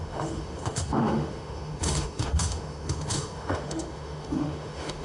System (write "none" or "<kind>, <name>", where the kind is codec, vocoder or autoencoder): autoencoder, DAC-VAE